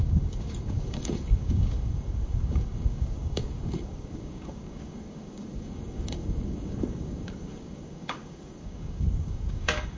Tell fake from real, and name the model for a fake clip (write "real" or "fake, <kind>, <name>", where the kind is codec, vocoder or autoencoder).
fake, codec, DAC